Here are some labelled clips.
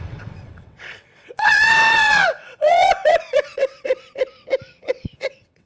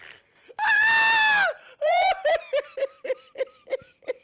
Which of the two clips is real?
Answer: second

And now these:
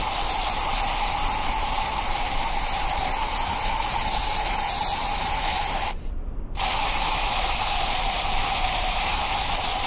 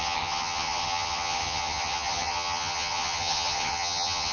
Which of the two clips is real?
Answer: first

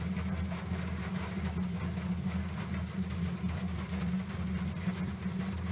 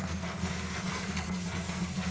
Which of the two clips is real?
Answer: first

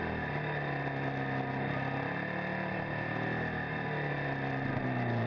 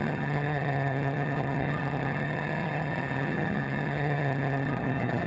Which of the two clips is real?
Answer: first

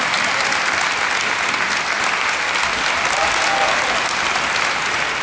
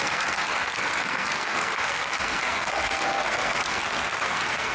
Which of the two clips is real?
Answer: first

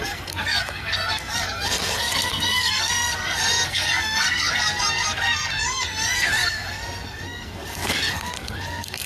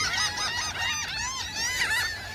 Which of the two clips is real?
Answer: second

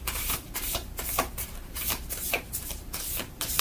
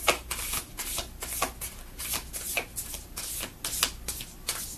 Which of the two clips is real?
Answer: second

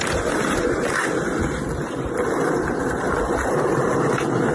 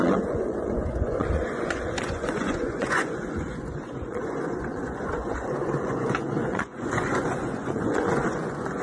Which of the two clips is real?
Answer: first